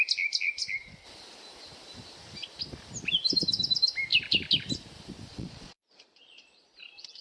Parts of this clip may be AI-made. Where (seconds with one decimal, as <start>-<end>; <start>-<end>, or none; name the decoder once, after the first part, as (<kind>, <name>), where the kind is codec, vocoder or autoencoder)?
5.3-6.6 (vocoder, Vocos)